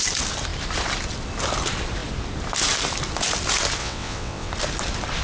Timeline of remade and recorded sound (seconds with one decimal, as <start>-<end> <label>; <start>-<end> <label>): 0.0-3.8 recorded; 3.8-4.5 remade; 4.5-5.2 recorded